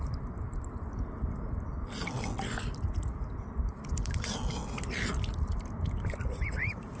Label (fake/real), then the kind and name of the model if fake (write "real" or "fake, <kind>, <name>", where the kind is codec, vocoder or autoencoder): real